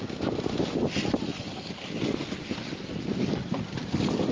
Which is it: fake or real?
real